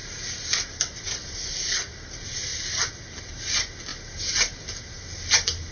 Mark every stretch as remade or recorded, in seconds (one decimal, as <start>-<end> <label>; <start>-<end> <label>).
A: 0.0-2.5 remade; 2.5-3.2 recorded; 3.2-3.9 remade; 3.9-4.5 recorded; 4.5-5.7 remade